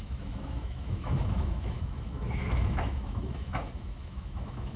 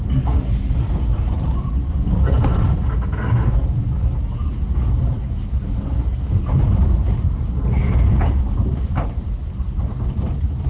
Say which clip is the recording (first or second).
second